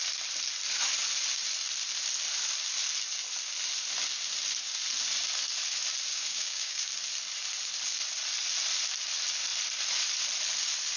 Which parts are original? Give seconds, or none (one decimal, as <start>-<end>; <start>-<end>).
0.0-6.1; 6.9-11.0